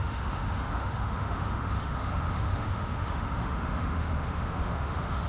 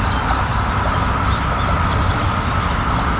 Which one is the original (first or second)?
second